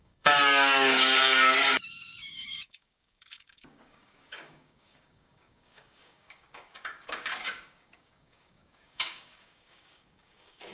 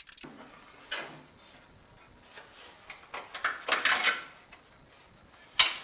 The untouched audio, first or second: second